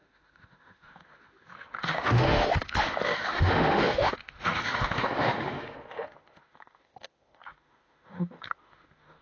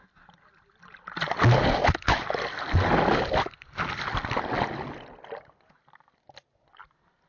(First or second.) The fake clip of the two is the first